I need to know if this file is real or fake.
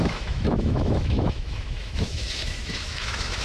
fake